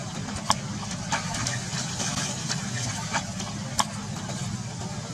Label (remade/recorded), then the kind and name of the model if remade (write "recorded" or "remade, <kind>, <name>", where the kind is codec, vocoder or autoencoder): recorded